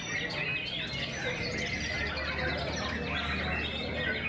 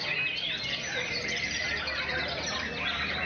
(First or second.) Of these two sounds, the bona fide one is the first